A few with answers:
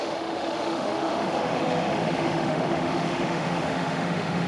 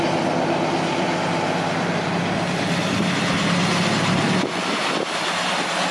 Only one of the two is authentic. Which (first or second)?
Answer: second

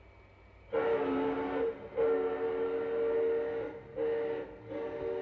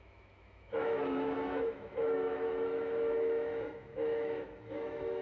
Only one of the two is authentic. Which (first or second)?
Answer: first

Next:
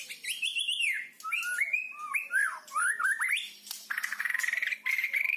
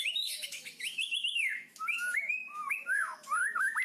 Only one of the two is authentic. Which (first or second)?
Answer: first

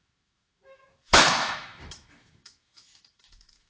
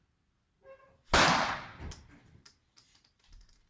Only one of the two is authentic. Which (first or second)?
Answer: second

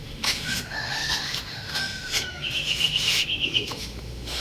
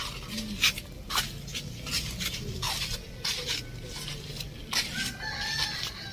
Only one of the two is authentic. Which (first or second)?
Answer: second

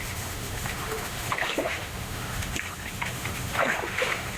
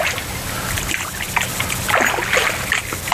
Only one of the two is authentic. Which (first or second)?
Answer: second